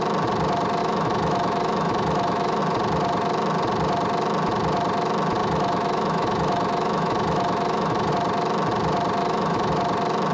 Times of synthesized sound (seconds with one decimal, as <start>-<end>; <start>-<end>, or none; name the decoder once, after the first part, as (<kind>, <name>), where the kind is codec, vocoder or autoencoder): 0.8-2.6 (autoencoder, DAC-VAE); 5.4-8.1; 9.2-9.7

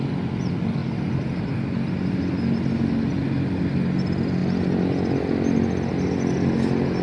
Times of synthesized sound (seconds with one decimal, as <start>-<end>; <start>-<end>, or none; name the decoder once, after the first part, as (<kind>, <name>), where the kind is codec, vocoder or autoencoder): none

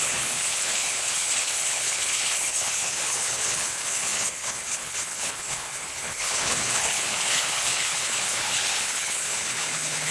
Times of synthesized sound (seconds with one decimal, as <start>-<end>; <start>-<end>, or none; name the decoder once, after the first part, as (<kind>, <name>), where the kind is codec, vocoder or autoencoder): 0.0-10.1 (codec, HILCodec)

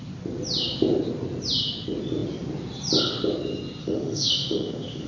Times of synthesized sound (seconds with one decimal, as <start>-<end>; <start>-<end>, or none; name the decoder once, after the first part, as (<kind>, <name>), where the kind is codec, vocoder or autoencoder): 3.8-5.1 (autoencoder, DAC-VAE)